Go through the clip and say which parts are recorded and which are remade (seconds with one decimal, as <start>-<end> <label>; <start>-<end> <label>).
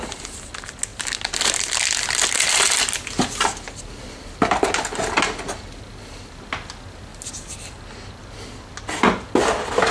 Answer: 0.0-9.9 recorded